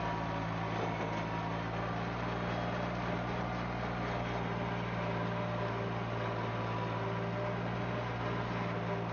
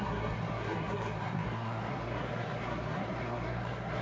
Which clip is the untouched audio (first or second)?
first